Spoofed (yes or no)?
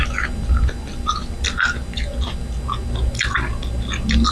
no